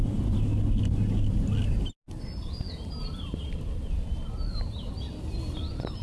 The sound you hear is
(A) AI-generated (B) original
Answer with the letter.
B